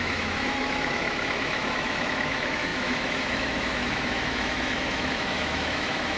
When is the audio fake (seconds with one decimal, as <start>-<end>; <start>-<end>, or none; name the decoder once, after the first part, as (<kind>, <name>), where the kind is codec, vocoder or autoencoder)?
0.0-6.2 (autoencoder, DAC-VAE)